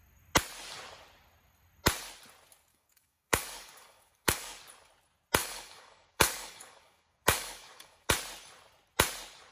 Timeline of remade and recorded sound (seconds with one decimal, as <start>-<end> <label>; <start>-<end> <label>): 0.0-2.7 recorded; 2.7-4.6 remade; 4.6-5.4 recorded; 5.4-8.1 remade; 8.1-9.5 recorded